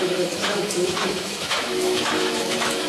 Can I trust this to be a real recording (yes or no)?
no